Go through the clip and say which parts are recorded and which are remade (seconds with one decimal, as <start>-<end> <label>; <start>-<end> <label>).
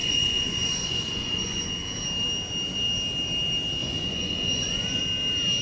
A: 0.0-1.7 remade; 1.7-3.8 recorded; 3.8-5.0 remade; 5.0-5.6 recorded